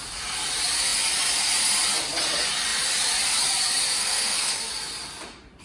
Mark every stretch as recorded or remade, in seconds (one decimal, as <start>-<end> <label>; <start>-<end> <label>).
0.0-4.0 recorded; 4.0-4.7 remade; 4.7-5.6 recorded